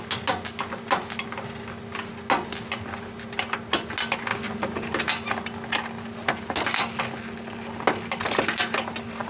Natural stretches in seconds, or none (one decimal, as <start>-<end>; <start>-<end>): 0.0-9.3